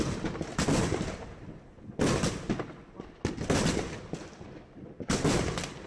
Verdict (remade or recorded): recorded